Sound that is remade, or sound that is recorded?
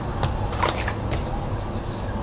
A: recorded